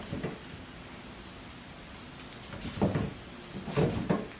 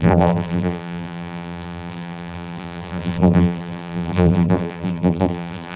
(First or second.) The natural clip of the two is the first